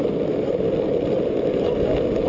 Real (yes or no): yes